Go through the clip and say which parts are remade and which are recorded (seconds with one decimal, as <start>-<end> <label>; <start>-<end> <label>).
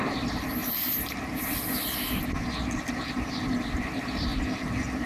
0.0-0.6 remade; 0.6-3.7 recorded; 3.7-4.3 remade; 4.3-5.1 recorded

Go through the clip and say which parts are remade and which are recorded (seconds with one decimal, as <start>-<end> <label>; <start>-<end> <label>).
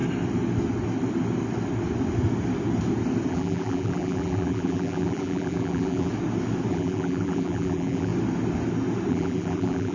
0.0-3.3 recorded; 3.3-6.1 remade; 6.1-6.7 recorded; 6.7-8.1 remade; 8.1-9.1 recorded; 9.1-9.9 remade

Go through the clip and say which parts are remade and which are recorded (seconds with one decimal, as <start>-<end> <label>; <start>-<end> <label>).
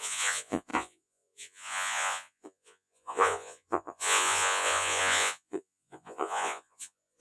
0.0-7.2 remade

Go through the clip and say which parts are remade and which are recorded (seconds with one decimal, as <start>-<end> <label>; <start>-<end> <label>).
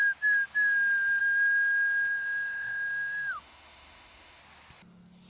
0.0-1.2 recorded; 1.2-4.4 remade; 4.4-5.3 recorded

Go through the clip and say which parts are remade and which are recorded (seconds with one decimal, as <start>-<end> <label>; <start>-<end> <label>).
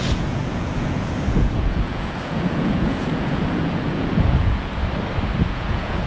0.0-4.8 remade; 4.8-5.4 recorded; 5.4-6.1 remade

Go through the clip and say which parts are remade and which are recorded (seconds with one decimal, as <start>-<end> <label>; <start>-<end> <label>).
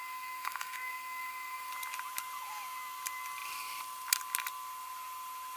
0.0-1.7 remade; 1.7-5.6 recorded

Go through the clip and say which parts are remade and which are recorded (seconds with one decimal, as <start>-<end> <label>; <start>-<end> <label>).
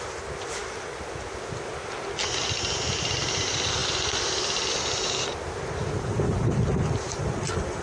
0.0-7.8 recorded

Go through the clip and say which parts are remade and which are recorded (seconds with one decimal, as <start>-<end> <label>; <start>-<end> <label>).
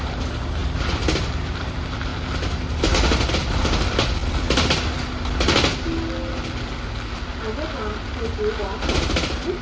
0.0-2.1 remade; 2.1-3.3 recorded; 3.3-4.2 remade; 4.2-8.9 recorded; 8.9-9.6 remade